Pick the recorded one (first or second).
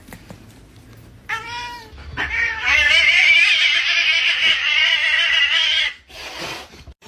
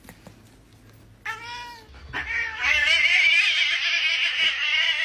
second